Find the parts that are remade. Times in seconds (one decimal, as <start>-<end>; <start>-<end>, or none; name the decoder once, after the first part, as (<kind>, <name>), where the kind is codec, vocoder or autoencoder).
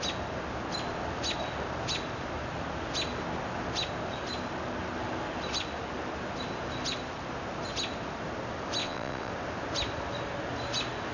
8.8-9.3 (vocoder, WaveNeXt)